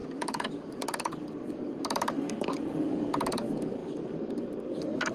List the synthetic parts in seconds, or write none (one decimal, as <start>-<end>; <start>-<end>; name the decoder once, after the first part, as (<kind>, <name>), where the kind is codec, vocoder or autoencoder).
0.0-5.1 (codec, DAC)